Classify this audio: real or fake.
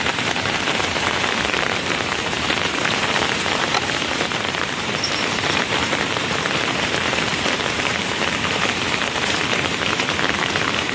fake